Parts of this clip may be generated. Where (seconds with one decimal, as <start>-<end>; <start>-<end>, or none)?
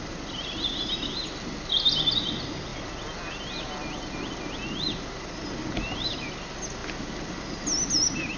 none